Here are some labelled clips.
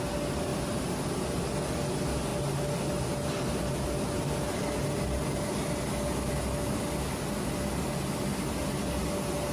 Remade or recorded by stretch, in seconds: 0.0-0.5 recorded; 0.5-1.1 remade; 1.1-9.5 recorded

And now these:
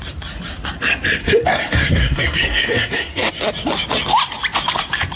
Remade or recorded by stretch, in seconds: 0.0-1.2 recorded; 1.2-3.3 remade; 3.3-5.2 recorded

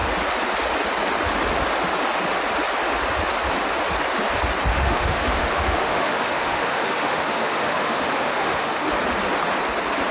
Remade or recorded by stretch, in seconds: 0.0-4.7 recorded; 4.7-8.9 remade; 8.9-10.1 recorded

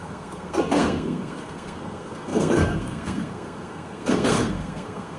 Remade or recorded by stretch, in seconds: 0.0-5.2 remade

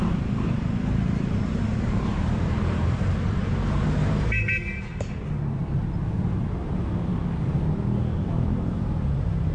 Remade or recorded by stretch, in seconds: 0.0-4.9 remade; 4.9-6.1 recorded; 6.1-7.1 remade; 7.1-8.2 recorded; 8.2-9.5 remade